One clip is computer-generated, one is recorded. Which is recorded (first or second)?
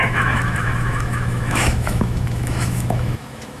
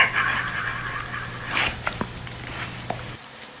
second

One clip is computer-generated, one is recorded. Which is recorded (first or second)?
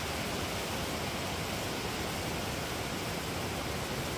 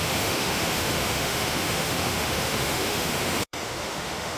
first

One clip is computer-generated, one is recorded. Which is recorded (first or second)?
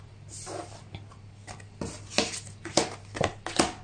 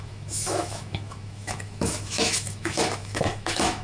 first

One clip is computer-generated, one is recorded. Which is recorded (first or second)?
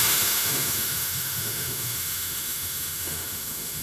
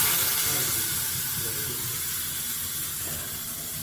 second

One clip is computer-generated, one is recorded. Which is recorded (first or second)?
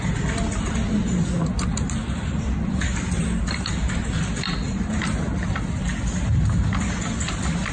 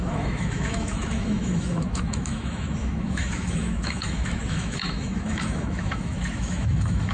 first